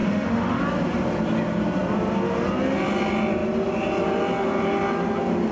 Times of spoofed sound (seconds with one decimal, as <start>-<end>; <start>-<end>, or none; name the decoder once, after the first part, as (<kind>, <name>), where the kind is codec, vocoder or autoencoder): 0.0-0.6 (autoencoder, DAC-VAE)